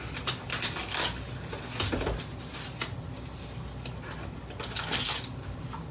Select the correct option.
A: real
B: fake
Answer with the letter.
A